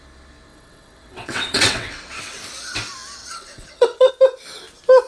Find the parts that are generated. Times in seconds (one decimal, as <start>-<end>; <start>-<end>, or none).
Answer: 0.5-2.4; 3.2-4.1